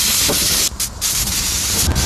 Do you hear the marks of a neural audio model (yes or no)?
no